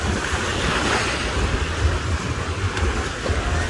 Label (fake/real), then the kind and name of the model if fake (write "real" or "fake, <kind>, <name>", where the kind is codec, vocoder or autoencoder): real